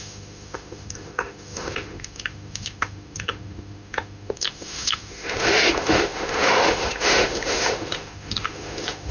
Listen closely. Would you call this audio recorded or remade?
remade